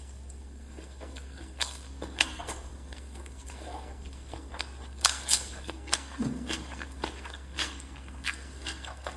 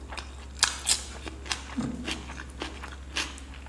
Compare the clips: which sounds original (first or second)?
second